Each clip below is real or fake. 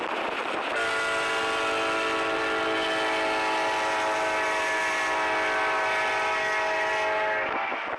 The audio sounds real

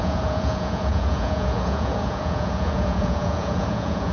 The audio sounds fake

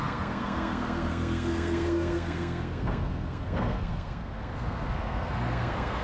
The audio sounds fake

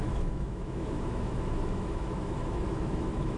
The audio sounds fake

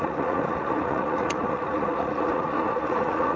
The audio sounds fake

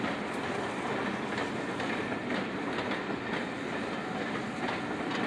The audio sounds real